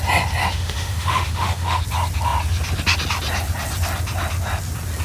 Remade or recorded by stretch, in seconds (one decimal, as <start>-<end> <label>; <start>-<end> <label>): 0.0-0.4 recorded; 0.4-1.8 remade; 1.8-5.0 recorded